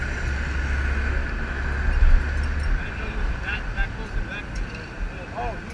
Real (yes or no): yes